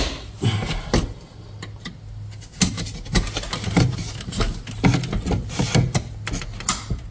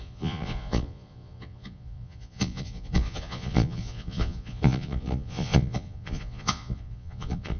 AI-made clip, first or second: second